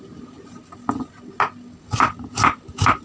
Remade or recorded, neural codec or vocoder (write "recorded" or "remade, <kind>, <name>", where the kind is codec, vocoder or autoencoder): recorded